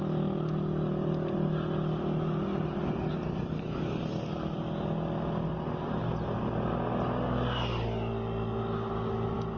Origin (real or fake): real